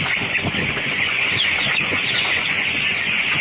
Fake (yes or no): yes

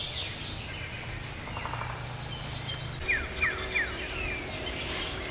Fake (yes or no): no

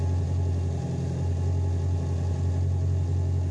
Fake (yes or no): no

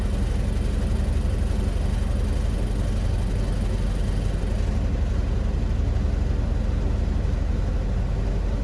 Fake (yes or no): no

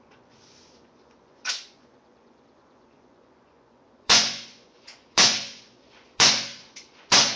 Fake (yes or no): yes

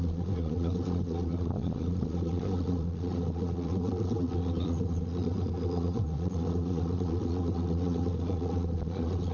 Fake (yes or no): yes